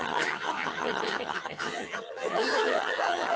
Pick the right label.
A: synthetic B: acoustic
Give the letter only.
A